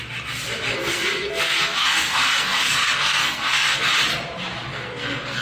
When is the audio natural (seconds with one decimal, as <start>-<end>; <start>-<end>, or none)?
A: 0.0-0.7; 3.9-4.7